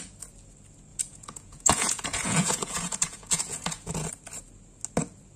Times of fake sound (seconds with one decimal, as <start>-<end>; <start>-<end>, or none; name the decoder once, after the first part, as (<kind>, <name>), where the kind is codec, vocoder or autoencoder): 0.9-4.1 (vocoder, Vocos)